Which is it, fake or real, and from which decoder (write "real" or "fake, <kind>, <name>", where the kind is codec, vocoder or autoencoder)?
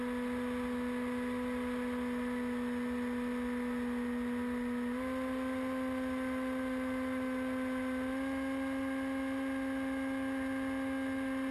real